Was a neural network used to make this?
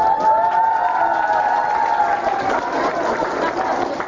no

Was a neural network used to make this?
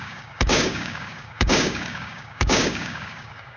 yes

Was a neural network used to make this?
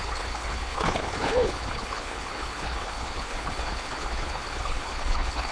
yes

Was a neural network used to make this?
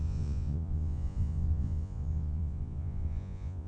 yes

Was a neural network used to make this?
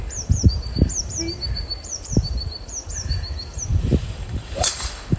yes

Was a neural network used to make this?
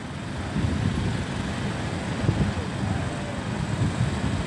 no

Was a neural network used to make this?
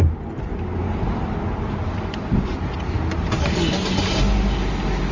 no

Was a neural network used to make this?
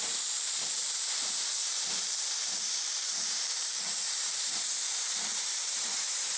yes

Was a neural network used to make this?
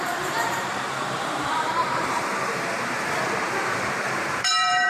yes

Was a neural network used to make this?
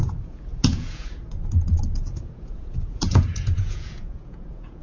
yes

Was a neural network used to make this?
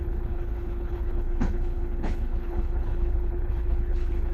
yes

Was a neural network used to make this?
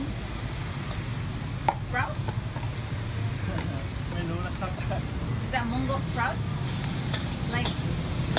no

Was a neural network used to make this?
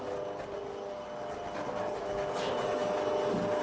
no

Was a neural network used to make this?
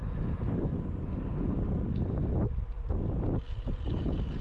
no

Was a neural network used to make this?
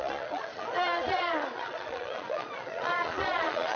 yes